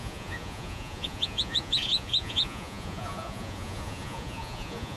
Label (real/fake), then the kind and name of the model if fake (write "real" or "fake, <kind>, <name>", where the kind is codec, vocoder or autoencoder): fake, vocoder, Vocos